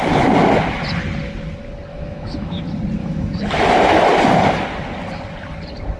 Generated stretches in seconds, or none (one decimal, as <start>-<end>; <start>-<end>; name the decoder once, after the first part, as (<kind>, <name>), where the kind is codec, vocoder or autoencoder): 1.9-2.6 (autoencoder, DAC-VAE); 3.0-3.6